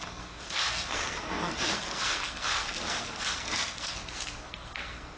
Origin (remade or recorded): remade